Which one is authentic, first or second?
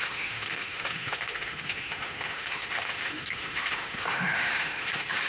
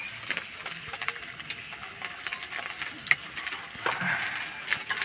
second